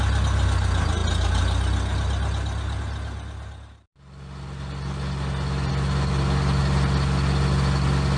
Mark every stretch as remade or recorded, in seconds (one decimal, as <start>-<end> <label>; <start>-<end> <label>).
0.0-8.2 recorded